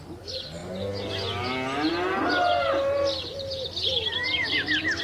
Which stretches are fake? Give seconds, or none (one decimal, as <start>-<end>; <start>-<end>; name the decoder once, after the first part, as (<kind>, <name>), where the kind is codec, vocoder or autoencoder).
none

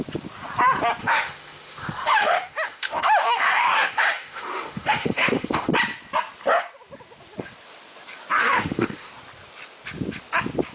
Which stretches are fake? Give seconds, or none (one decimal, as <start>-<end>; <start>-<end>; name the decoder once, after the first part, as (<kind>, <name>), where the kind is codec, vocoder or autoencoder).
1.0-5.7 (autoencoder, DAC-VAE); 8.4-9.1

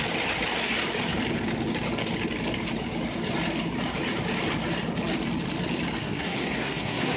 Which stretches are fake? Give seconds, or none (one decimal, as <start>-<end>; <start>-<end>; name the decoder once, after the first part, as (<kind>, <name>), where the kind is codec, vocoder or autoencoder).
6.0-7.2 (codec, SNAC)